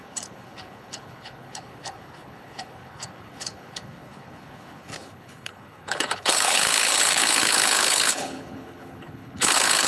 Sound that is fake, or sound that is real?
fake